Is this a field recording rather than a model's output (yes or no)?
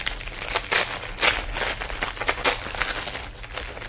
yes